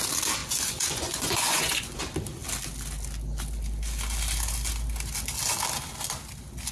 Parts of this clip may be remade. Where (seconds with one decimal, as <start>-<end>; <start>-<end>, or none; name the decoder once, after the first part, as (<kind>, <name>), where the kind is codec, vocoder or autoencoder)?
0.4-2.0 (vocoder, Vocos)